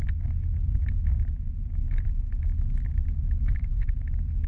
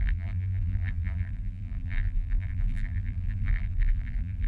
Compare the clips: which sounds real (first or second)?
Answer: first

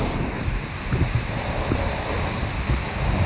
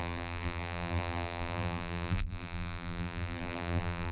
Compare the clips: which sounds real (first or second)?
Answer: first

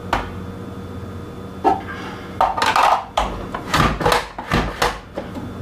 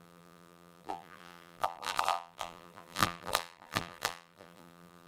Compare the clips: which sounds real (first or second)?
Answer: first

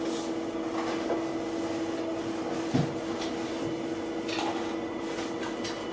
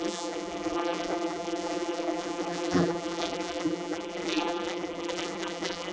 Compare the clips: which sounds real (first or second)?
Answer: first